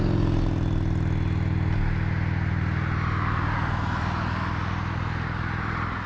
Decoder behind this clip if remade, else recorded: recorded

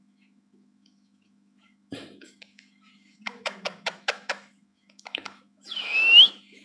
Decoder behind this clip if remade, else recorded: remade, autoencoder, DAC-VAE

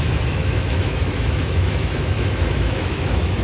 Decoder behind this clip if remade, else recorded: remade, autoencoder, DAC-VAE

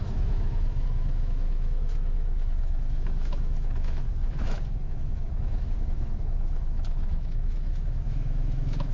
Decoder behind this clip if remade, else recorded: remade, autoencoder, DAC-VAE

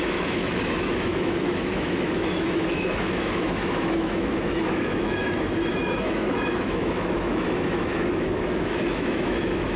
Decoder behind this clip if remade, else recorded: remade, autoencoder, DAC-VAE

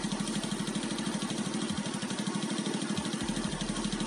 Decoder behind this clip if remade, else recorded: recorded